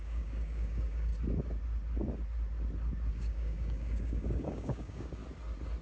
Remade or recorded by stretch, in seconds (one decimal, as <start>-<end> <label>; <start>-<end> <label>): 0.0-1.1 remade; 1.1-3.1 recorded; 3.1-5.2 remade; 5.2-5.8 recorded